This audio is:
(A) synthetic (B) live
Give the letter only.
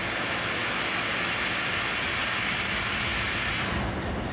B